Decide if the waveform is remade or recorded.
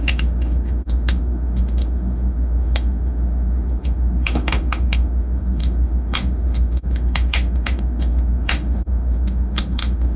remade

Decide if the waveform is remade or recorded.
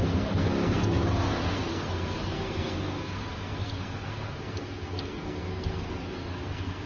remade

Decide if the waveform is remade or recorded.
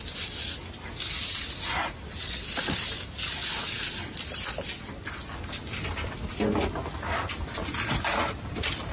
recorded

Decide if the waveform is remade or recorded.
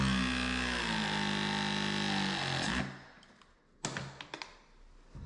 recorded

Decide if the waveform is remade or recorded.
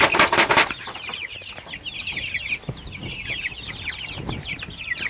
recorded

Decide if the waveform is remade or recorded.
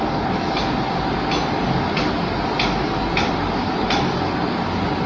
recorded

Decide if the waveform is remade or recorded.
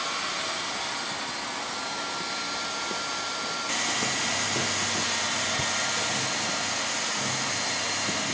recorded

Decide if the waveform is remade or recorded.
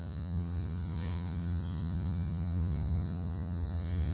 remade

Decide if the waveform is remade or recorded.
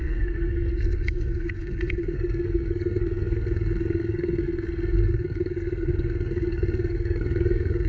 remade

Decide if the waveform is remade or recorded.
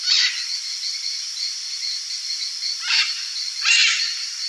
recorded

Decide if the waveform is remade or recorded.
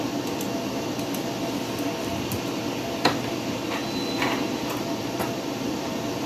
remade